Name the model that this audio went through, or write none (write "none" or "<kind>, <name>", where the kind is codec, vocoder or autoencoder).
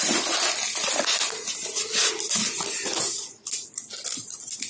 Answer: none